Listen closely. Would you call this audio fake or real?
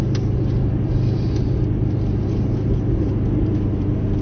real